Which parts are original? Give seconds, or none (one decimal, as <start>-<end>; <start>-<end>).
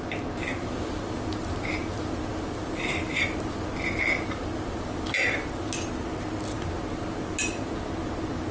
0.0-8.5